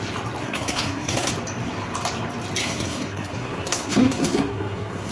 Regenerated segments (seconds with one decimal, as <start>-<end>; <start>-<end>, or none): 0.4-1.3; 2.6-5.1